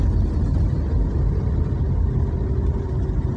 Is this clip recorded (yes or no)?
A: yes